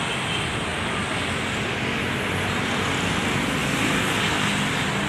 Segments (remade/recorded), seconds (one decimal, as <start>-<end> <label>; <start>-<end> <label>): 0.0-5.1 recorded